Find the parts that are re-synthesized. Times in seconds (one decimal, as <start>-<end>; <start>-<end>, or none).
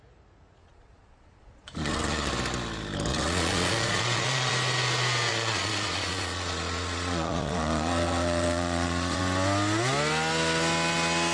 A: 0.6-2.3; 3.1-4.5; 5.3-9.2